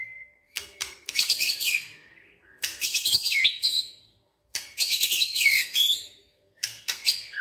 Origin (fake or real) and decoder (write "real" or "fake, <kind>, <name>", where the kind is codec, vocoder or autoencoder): fake, codec, SNAC